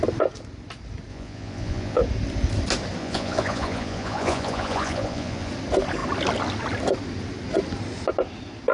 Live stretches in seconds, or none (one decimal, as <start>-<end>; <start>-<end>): 0.0-1.1; 2.0-3.0; 5.5-8.7